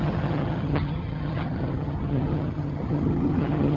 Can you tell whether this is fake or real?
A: fake